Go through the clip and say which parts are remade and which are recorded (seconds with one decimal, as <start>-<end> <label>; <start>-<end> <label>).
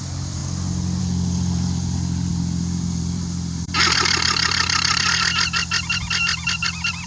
0.0-0.4 remade; 0.4-1.0 recorded; 1.0-7.1 remade